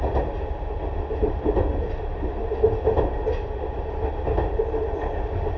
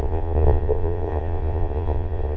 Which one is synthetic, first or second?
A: second